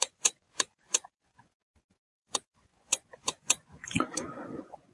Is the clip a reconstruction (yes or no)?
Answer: yes